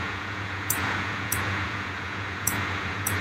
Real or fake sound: fake